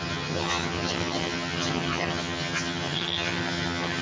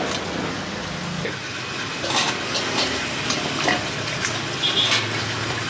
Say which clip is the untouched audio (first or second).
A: second